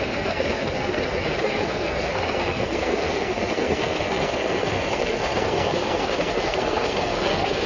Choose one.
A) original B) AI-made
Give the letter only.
B